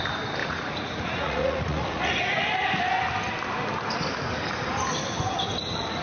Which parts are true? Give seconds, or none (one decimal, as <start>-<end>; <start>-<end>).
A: 0.0-0.4; 2.1-6.0